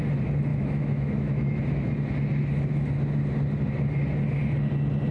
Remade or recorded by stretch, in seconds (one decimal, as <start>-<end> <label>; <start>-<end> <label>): 0.0-0.5 recorded; 0.5-1.6 remade; 1.6-5.1 recorded